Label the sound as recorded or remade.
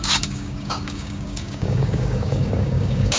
remade